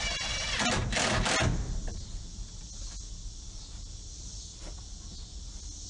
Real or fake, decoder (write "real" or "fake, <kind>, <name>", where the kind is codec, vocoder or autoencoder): real